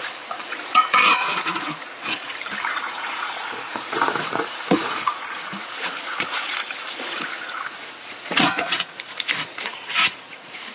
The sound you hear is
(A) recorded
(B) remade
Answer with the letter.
B